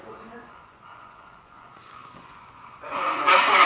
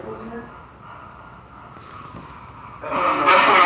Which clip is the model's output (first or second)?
first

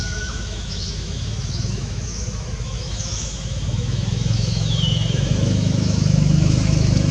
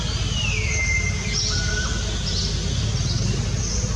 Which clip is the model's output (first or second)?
first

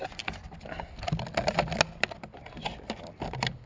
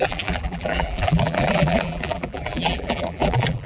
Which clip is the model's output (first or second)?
second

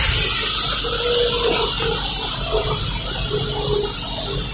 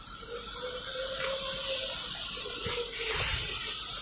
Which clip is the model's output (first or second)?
second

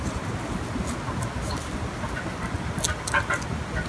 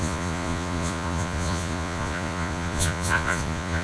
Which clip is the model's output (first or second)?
second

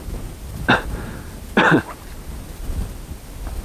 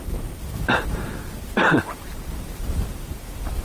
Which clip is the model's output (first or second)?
second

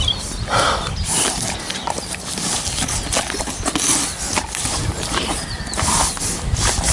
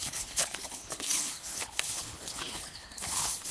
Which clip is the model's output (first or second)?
second